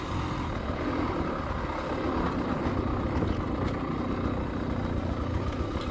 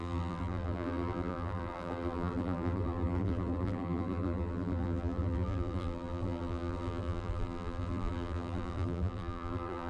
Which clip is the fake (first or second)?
second